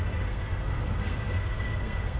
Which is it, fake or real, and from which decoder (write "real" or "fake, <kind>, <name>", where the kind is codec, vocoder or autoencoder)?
fake, codec, SNAC